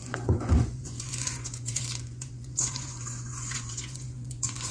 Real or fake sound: fake